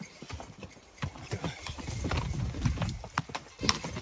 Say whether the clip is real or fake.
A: real